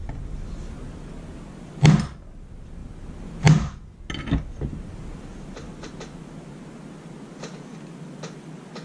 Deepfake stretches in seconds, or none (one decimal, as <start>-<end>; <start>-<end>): none